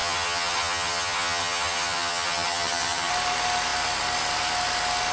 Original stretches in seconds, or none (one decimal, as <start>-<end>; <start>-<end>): 3.1-5.1